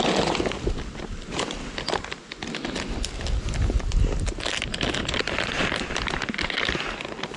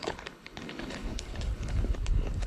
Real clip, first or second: first